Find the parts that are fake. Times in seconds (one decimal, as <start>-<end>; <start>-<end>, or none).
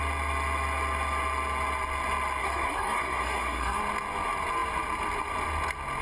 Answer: 2.4-3.8